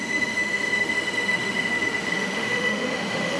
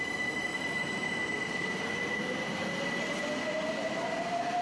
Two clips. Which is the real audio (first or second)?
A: second